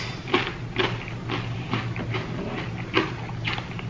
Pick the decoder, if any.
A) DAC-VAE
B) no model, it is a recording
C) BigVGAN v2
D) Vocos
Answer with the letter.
B